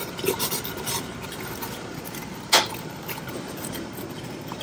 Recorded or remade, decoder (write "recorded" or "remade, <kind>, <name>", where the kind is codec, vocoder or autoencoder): recorded